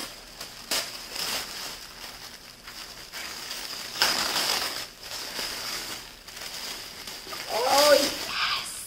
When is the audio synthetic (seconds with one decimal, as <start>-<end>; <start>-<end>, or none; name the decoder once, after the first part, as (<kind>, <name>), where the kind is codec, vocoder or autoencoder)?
3.2-6.2 (codec, DAC)